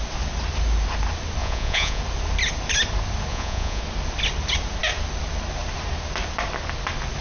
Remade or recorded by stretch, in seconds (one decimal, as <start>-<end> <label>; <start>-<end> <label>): 0.0-1.4 recorded; 1.4-2.0 remade; 2.0-3.3 recorded; 3.3-3.8 remade; 3.8-7.2 recorded